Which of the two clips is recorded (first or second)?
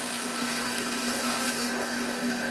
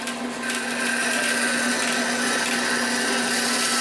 second